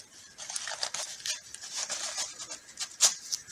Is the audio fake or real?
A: real